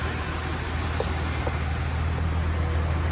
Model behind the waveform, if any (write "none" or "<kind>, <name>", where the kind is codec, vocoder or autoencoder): none